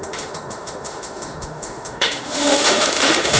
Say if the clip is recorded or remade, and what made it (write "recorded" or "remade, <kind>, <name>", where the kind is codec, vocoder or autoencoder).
remade, autoencoder, DAC-VAE